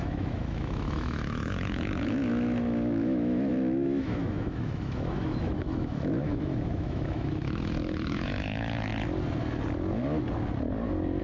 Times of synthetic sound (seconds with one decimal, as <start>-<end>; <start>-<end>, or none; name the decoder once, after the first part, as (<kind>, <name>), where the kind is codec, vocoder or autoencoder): 0.0-8.9 (autoencoder, DAC-VAE)